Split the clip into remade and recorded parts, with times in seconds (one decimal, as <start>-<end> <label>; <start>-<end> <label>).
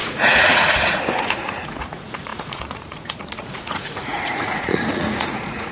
0.0-5.7 remade